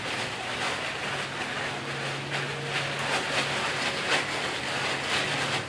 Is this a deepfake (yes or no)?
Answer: no